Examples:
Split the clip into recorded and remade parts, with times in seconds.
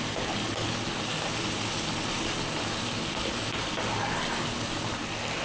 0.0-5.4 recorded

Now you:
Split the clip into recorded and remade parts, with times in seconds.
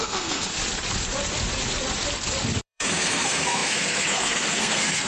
0.0-0.5 remade; 0.5-2.6 recorded; 2.6-5.1 remade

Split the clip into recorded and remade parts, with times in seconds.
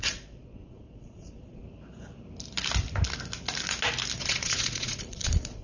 0.0-1.6 remade; 1.6-4.2 recorded; 4.2-5.6 remade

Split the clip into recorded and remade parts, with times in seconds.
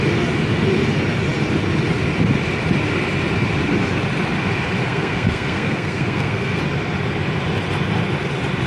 0.0-4.8 recorded; 4.8-6.6 remade; 6.6-8.7 recorded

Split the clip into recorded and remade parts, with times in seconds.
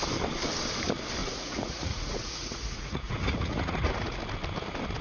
0.0-1.2 recorded; 1.2-4.2 remade; 4.2-5.0 recorded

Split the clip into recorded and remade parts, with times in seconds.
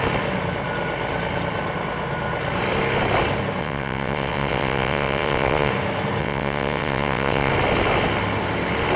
0.0-3.6 recorded; 3.6-5.7 remade; 5.7-6.2 recorded; 6.2-7.5 remade; 7.5-9.0 recorded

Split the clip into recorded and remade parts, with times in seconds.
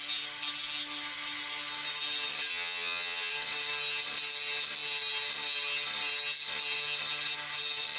0.0-2.5 recorded; 2.5-3.3 remade; 3.3-8.0 recorded